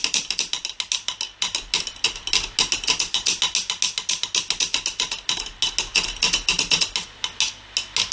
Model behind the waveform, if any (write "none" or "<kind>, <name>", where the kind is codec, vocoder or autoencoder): none